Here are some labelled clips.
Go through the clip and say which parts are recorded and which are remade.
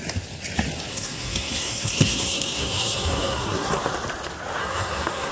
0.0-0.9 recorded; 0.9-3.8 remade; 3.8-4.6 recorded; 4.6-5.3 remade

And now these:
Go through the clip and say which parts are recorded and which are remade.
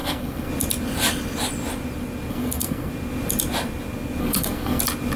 0.0-0.5 remade; 0.5-2.3 recorded; 2.3-2.9 remade; 2.9-4.2 recorded; 4.2-4.8 remade; 4.8-5.2 recorded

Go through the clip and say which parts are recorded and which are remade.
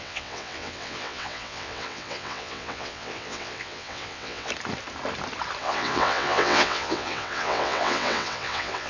0.0-4.5 remade; 4.5-5.6 recorded; 5.6-8.9 remade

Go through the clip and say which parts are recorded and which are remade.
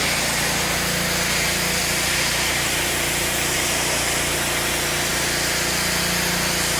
0.0-1.8 recorded; 1.8-3.9 remade; 3.9-6.8 recorded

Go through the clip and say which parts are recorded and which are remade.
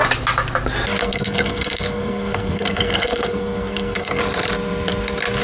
0.0-1.0 recorded; 1.0-4.2 remade; 4.2-5.4 recorded